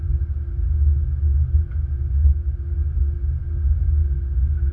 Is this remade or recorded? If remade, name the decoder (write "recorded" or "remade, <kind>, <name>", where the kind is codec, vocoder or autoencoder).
recorded